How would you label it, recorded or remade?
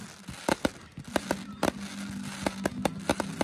recorded